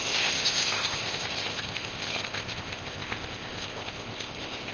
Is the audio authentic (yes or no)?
no